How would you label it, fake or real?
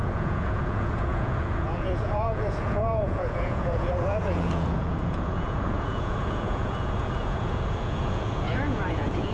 fake